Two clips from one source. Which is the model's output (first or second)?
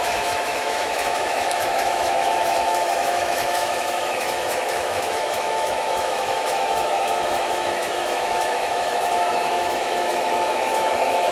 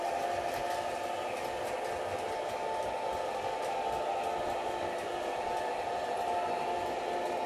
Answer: first